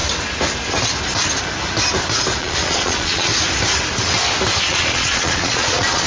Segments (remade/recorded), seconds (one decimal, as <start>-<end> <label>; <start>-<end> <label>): 0.0-2.4 recorded; 2.4-3.3 remade; 3.3-4.6 recorded; 4.6-6.1 remade